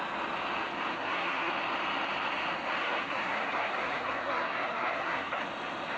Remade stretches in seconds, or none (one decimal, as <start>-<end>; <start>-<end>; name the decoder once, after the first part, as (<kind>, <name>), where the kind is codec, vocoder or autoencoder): 0.9-1.5 (codec, SNAC); 2.8-5.4